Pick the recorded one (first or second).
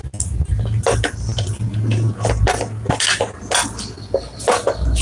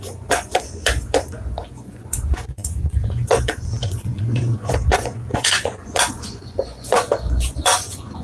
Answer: first